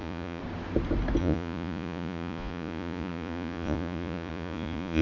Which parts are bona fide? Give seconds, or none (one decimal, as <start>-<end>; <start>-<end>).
0.4-1.2